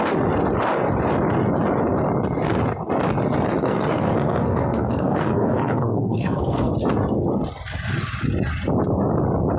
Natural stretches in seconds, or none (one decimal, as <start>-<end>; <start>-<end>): 0.0-3.6; 6.7-9.6